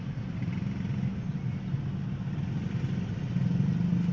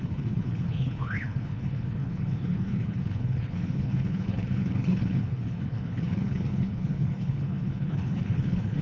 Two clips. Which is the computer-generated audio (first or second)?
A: second